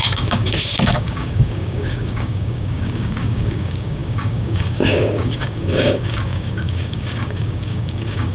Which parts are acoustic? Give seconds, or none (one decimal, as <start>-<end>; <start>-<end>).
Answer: none